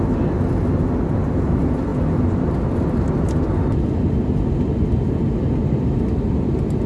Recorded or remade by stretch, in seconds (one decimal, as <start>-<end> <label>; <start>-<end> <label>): 0.0-6.9 recorded

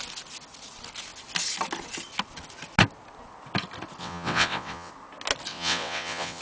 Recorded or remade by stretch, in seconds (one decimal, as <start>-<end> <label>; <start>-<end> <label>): 0.0-4.0 recorded; 4.0-4.9 remade; 4.9-5.5 recorded; 5.5-6.4 remade